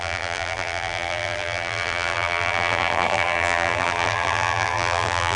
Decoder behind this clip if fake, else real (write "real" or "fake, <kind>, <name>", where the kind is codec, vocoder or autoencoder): fake, vocoder, BigVGAN v2